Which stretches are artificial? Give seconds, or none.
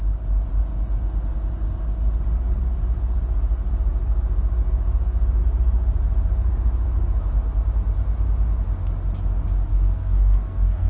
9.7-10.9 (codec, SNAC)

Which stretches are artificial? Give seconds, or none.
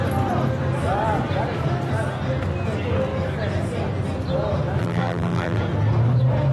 4.8-5.6 (vocoder, BigVGAN v2)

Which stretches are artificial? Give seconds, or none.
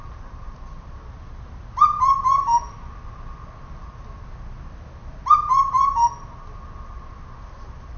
none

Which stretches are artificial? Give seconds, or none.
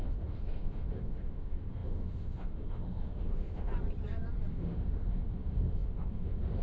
0.0-3.7 (autoencoder, DAC-VAE); 4.5-6.6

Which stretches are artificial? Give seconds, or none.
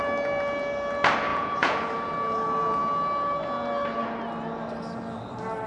1.3-1.8 (vocoder, Vocos)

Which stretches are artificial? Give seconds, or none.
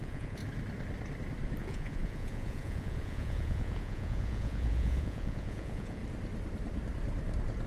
0.0-0.4 (vocoder, Vocos); 1.6-6.0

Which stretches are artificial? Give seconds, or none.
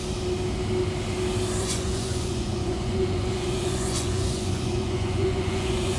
1.6-6.0 (vocoder, Vocos)